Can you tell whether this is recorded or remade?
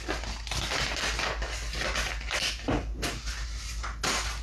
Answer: recorded